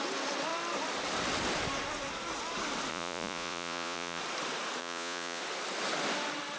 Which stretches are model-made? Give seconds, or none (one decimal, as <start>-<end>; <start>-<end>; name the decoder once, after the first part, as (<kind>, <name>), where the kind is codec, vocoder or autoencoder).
2.9-4.2 (vocoder, Vocos); 4.8-5.4